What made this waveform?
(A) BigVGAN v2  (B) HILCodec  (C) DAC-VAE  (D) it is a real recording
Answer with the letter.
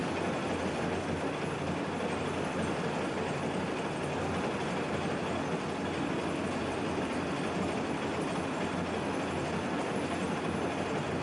D